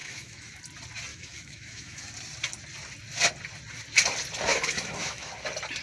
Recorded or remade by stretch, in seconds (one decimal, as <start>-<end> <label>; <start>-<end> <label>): 0.0-0.6 remade; 0.6-1.1 recorded; 1.1-2.1 remade; 2.1-4.5 recorded; 4.5-5.3 remade; 5.3-5.8 recorded